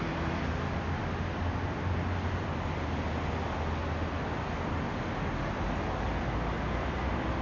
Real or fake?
real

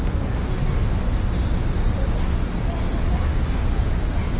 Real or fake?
real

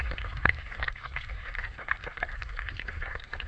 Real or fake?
fake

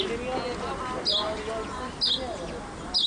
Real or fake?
real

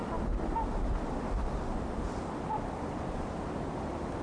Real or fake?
real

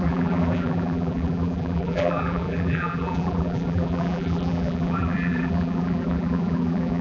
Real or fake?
fake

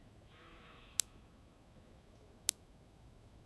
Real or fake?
fake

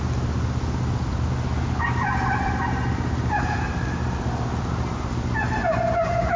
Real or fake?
real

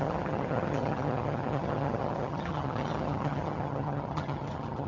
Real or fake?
fake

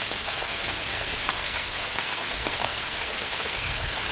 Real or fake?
fake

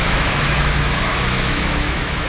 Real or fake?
fake